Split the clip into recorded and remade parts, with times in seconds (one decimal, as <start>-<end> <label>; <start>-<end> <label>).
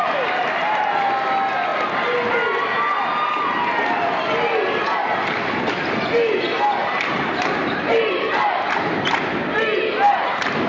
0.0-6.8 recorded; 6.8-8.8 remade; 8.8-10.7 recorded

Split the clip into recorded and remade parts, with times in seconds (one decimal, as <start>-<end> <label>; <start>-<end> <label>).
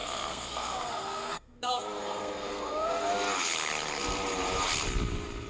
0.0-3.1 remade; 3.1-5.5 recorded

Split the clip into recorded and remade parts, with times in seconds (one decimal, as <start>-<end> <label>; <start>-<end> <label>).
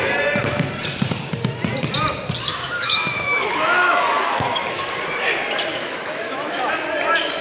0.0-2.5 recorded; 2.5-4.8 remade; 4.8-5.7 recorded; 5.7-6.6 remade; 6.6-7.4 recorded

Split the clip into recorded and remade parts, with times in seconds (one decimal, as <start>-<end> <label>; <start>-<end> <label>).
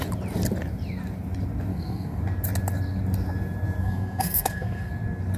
0.0-1.7 recorded; 1.7-2.2 remade; 2.2-3.8 recorded; 3.8-4.9 remade; 4.9-5.4 recorded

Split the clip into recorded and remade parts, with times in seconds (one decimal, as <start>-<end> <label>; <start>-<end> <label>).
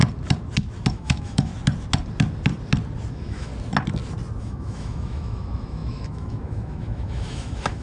0.0-0.9 recorded; 0.9-1.5 remade; 1.5-3.1 recorded; 3.1-3.5 remade; 3.5-4.4 recorded; 4.4-7.8 remade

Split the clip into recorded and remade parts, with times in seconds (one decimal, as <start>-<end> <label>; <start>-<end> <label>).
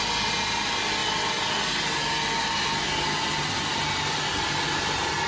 0.0-5.3 recorded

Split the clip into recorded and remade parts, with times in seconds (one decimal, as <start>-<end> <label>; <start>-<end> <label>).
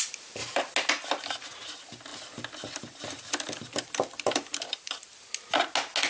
0.0-2.1 recorded; 2.1-5.2 remade; 5.2-6.1 recorded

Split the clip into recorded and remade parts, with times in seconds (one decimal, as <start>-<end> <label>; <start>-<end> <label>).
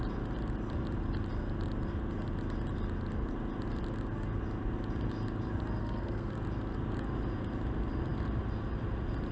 0.0-5.8 recorded; 5.8-6.3 remade; 6.3-9.3 recorded